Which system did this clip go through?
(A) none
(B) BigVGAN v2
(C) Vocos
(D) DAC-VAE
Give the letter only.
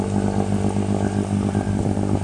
A